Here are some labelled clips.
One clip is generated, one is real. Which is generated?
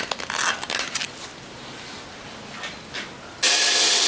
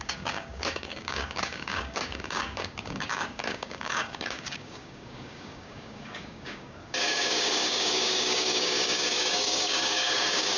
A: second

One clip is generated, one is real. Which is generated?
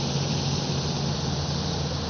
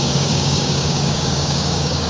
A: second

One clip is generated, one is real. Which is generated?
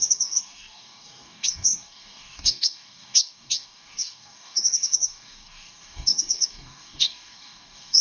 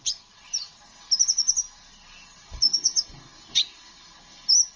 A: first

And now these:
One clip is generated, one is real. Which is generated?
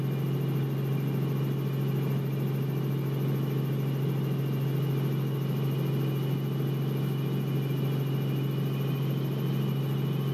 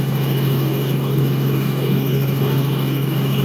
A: second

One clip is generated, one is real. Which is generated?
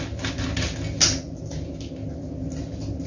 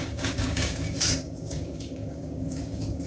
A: second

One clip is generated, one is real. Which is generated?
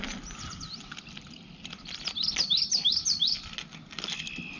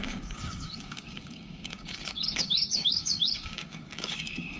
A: second